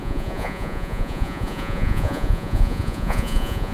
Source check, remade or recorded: remade